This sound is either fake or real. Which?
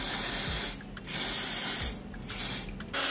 real